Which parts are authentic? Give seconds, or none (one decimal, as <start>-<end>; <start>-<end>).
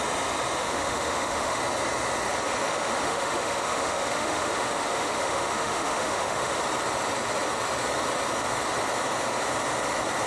0.0-0.6; 1.6-2.7; 6.6-10.3